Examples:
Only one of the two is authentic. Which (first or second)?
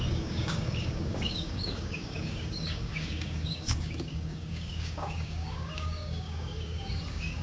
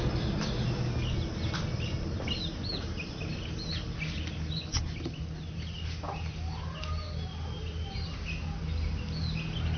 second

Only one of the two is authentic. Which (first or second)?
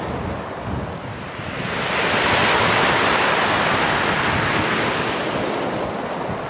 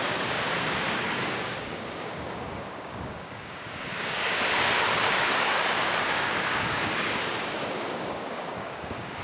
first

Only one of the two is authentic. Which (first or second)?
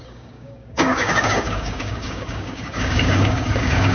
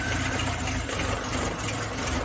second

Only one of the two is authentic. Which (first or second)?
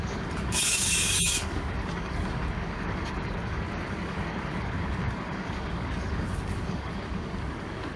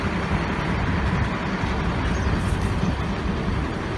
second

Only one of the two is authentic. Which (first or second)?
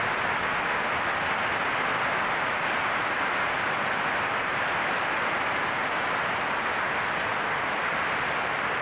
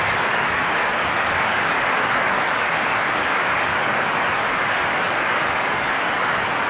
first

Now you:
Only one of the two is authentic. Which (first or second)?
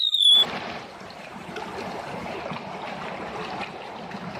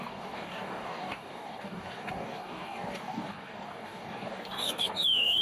first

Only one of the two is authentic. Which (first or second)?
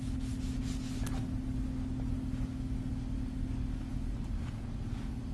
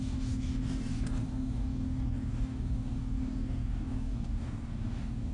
first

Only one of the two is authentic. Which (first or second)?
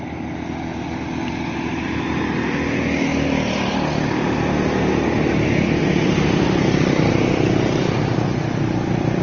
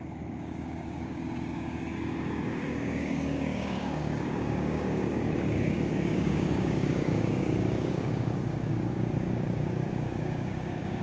first